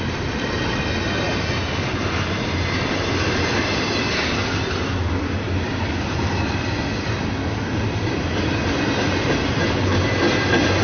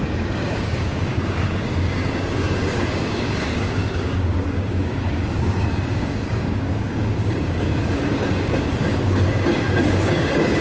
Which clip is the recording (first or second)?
first